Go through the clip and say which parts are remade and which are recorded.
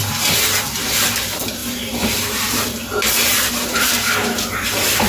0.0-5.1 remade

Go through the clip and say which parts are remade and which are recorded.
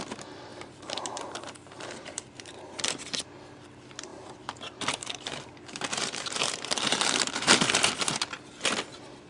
0.0-0.5 recorded; 0.5-2.7 remade; 2.7-4.1 recorded; 4.1-7.9 remade; 7.9-9.3 recorded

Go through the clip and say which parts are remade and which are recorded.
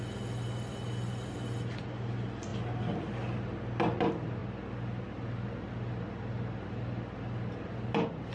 0.0-8.3 recorded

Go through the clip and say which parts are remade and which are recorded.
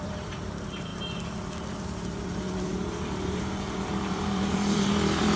0.0-0.9 remade; 0.9-1.8 recorded; 1.8-5.4 remade